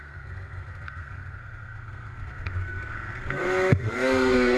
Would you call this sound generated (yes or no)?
yes